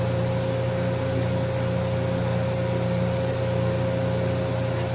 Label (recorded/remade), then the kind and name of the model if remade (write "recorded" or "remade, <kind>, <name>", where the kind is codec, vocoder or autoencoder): recorded